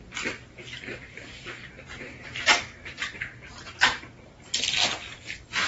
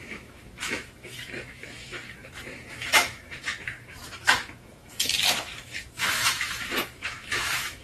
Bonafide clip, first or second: first